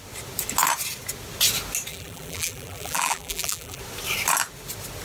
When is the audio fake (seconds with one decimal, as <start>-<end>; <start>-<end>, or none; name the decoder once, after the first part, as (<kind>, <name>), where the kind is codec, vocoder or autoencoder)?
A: 1.9-3.8 (vocoder, BigVGAN v2)